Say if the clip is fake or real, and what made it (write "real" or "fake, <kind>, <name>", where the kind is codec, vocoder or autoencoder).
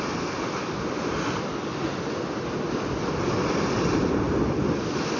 real